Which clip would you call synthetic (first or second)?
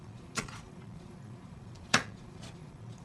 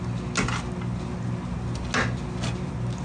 first